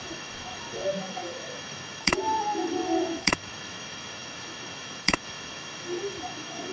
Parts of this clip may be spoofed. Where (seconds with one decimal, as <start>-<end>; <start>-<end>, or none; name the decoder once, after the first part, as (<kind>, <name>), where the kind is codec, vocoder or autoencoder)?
0.0-6.7 (autoencoder, DAC-VAE)